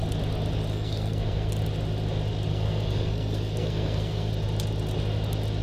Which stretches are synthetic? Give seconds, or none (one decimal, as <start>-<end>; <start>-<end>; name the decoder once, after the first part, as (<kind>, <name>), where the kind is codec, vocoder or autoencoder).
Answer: 0.7-1.5 (codec, SNAC); 2.5-4.3